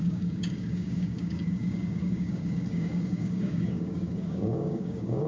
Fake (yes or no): yes